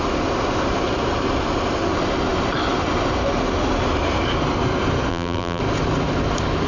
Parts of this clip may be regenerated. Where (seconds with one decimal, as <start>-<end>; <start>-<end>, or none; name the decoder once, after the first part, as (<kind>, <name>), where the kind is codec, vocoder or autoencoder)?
5.1-5.6 (vocoder, BigVGAN v2)